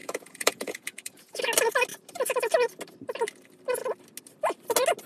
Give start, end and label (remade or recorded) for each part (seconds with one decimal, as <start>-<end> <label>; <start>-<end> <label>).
0.0-1.4 remade; 1.4-5.1 recorded